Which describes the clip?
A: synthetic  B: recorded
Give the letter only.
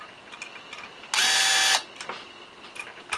B